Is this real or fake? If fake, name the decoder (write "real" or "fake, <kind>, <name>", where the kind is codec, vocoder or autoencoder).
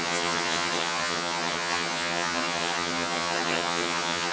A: fake, vocoder, HiFi-GAN